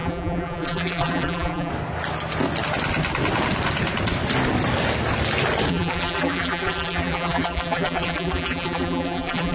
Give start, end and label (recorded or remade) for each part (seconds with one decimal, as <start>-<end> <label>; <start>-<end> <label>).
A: 0.0-1.7 remade; 1.7-5.7 recorded; 5.7-9.5 remade